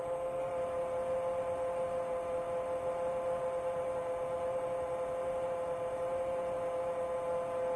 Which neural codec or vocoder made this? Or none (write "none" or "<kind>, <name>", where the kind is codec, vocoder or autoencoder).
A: none